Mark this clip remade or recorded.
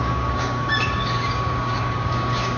remade